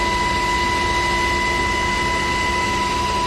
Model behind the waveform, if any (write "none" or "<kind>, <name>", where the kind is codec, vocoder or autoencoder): none